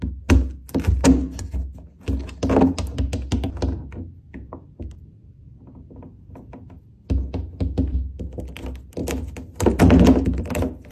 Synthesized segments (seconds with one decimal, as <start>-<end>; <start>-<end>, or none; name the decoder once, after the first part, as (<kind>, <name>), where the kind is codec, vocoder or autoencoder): 9.0-9.8 (vocoder, BigVGAN v2)